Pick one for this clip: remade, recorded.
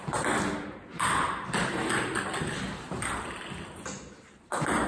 recorded